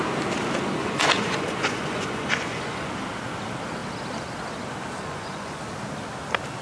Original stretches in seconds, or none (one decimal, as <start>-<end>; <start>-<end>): 0.0-0.8; 2.9-5.0; 5.6-6.6